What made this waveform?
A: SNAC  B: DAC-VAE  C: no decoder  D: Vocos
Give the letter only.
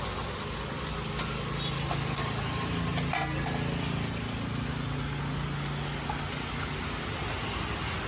C